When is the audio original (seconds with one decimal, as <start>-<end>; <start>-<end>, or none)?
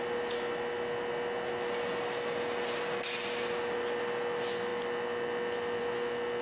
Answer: 0.0-6.4